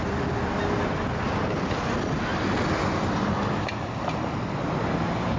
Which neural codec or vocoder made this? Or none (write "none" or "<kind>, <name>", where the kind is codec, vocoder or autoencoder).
none